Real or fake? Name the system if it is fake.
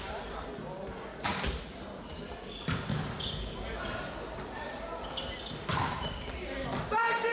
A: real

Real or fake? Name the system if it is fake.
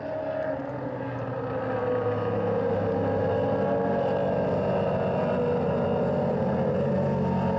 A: real